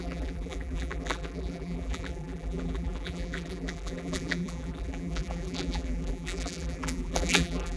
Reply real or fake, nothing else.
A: fake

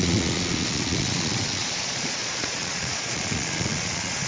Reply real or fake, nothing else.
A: fake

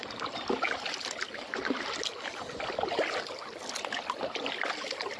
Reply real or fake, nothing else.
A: real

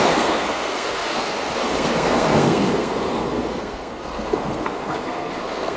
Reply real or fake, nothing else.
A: fake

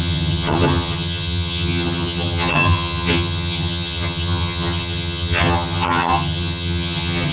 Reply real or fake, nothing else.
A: fake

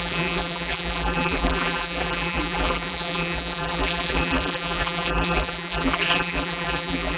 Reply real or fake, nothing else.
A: fake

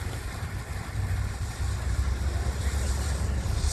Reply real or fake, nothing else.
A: real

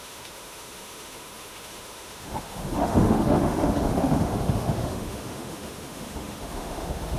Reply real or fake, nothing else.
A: fake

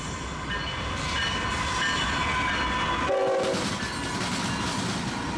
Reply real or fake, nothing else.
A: real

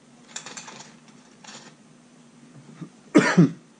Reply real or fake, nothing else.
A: fake